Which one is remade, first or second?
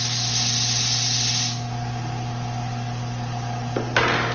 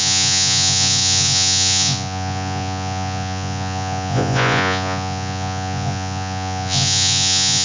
second